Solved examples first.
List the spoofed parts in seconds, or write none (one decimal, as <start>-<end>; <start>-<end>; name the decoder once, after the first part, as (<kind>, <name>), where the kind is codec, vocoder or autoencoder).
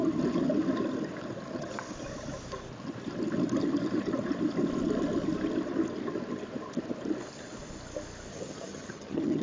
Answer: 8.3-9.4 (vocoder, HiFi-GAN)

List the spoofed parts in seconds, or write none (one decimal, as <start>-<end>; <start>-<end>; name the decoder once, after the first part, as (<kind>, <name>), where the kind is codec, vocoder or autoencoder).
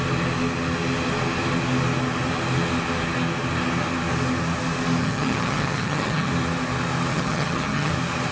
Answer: 5.0-6.3 (vocoder, HiFi-GAN); 7.1-7.9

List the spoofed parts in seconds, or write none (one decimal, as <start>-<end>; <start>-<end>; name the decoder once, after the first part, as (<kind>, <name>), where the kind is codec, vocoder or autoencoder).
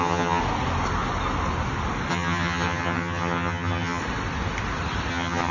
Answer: 0.0-0.4 (vocoder, HiFi-GAN); 2.1-4.0; 5.1-5.5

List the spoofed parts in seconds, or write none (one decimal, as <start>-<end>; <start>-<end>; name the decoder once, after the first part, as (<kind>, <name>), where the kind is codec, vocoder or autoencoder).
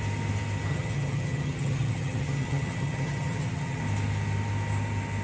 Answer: 0.7-3.8 (vocoder, HiFi-GAN)